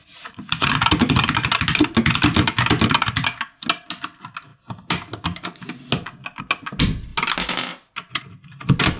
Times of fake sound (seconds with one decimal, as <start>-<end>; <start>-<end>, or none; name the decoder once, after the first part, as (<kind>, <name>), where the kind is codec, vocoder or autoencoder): 0.0-0.7 (vocoder, Vocos)